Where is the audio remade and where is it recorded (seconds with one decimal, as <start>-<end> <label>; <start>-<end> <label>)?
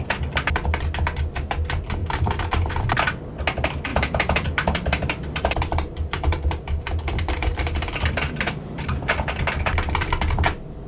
0.0-2.0 recorded; 2.0-2.8 remade; 2.8-3.9 recorded; 3.9-9.1 remade; 9.1-10.9 recorded